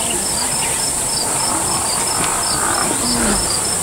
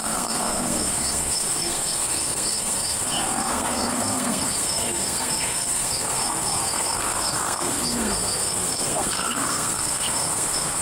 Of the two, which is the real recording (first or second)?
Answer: first